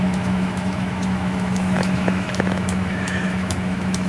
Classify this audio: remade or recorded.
remade